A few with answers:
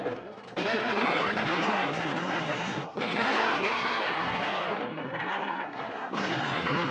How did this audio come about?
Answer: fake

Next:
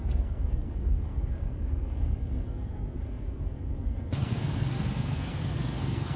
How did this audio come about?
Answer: fake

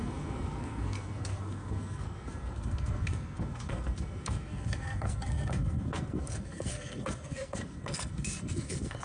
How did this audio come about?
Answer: fake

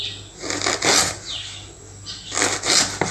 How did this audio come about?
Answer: real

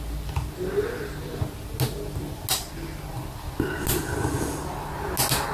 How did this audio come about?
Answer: real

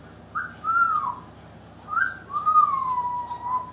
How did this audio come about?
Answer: real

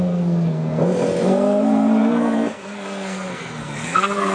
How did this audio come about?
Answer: fake